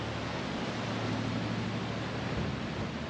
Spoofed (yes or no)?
no